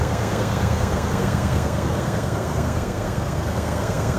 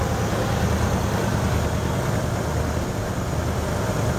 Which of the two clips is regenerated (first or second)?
first